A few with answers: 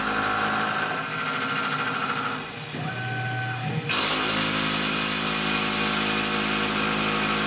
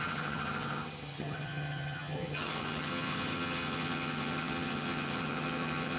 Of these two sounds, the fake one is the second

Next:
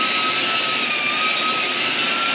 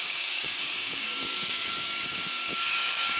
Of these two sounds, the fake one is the second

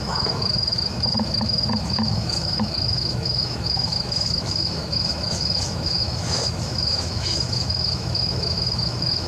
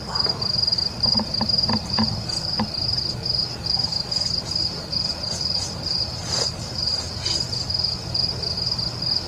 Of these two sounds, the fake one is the first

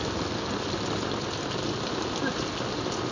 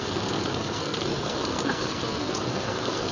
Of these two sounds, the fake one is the second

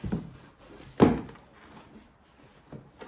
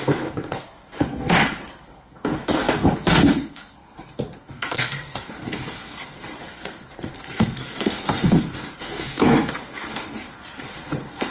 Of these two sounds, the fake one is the second